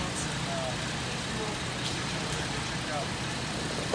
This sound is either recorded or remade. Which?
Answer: recorded